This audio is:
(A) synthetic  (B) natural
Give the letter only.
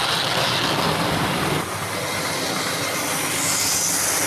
B